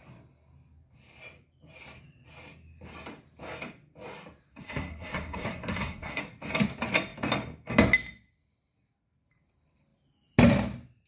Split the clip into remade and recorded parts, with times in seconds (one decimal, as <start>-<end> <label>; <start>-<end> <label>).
0.0-4.5 recorded; 4.5-6.2 remade; 6.2-11.1 recorded